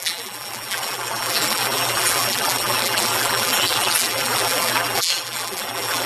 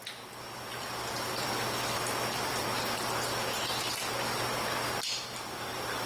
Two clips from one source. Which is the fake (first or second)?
first